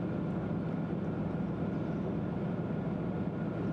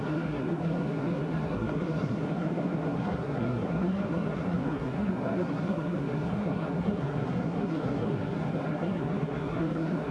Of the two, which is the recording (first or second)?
first